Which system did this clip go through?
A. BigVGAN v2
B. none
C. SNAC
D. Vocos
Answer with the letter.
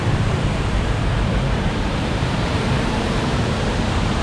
A